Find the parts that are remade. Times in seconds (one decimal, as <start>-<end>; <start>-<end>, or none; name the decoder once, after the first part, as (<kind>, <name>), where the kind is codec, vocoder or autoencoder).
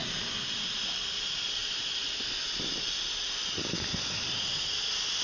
none